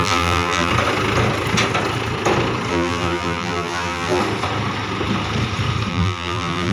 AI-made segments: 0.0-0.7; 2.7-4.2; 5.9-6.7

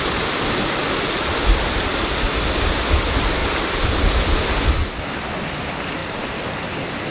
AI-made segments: 3.4-5.0; 6.0-6.6

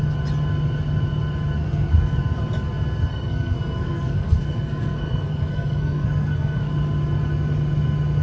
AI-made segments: 1.6-2.2; 3.1-6.7

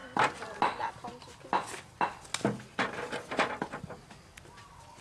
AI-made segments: none

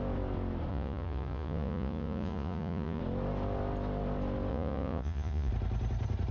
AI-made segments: 0.7-3.0; 4.5-5.5

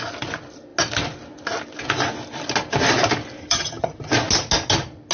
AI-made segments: 3.4-4.1

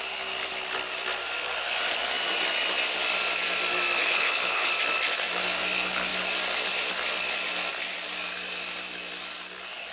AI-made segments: 4.0-4.7

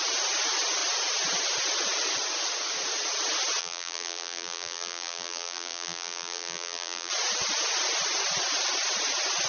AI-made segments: 3.6-7.1